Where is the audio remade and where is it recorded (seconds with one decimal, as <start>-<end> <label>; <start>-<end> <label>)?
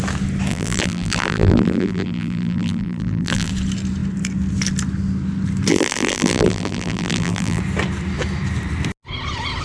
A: 0.0-0.5 recorded; 0.5-3.5 remade; 3.5-5.7 recorded; 5.7-7.6 remade; 7.6-9.6 recorded